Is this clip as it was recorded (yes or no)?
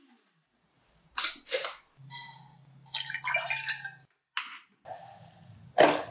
yes